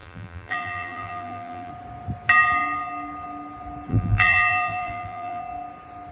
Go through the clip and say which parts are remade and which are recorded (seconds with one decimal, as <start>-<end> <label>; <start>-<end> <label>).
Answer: 0.0-1.7 remade; 1.7-3.9 recorded; 3.9-5.4 remade; 5.4-6.1 recorded